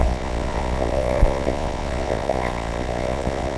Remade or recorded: remade